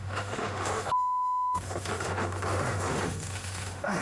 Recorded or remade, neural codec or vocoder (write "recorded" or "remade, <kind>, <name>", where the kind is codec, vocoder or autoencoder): remade, autoencoder, DAC-VAE